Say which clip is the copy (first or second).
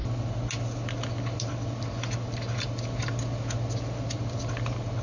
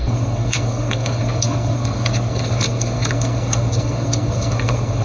second